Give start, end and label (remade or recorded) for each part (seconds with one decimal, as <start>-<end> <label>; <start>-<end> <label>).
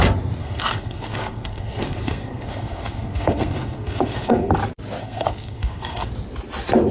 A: 0.0-0.4 recorded; 0.4-4.5 remade; 4.5-5.0 recorded; 5.0-6.1 remade; 6.1-6.9 recorded